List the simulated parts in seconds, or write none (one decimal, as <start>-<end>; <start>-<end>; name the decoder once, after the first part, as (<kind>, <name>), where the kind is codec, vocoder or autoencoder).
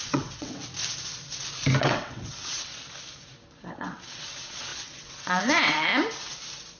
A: 0.0-0.6 (vocoder, WaveNeXt); 1.8-2.7; 3.7-5.9